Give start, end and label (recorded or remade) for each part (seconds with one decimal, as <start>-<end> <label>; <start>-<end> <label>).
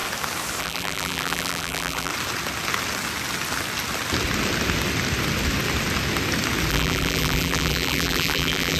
0.0-0.6 recorded; 0.6-2.1 remade; 2.1-6.7 recorded; 6.7-8.8 remade